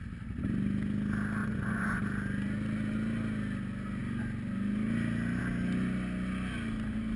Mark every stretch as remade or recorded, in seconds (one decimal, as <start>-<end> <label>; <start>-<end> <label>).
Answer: 0.0-1.4 recorded; 1.4-2.0 remade; 2.0-7.2 recorded